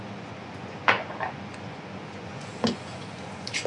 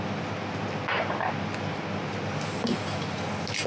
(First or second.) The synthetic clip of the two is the first